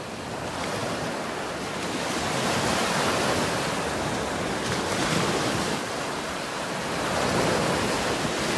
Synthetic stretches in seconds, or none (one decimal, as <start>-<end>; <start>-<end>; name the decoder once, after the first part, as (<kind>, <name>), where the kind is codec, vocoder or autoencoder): none